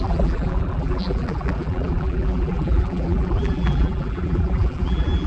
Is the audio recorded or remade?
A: remade